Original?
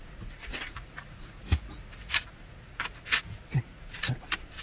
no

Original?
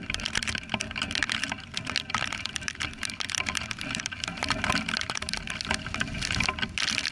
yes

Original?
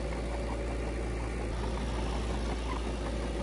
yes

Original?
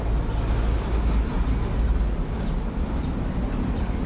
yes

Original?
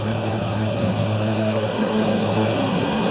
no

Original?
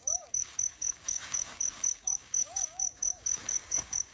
no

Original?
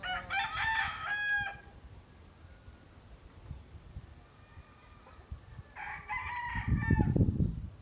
yes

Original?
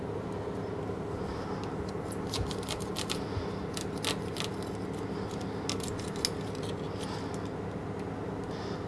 yes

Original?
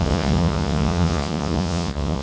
no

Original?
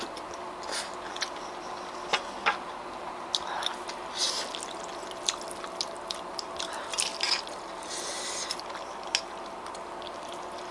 yes